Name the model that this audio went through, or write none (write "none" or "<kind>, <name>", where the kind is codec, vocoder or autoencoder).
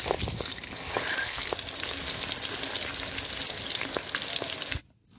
none